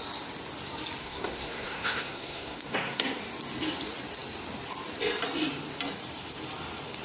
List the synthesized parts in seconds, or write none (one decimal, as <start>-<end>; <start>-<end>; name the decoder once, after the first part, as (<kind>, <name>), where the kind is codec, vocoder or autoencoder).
1.0-3.2 (codec, SNAC)